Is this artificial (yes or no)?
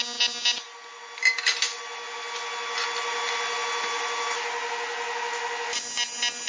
no